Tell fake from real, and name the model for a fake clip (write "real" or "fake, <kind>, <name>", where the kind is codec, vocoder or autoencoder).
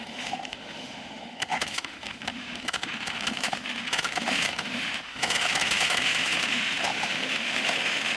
fake, autoencoder, DAC-VAE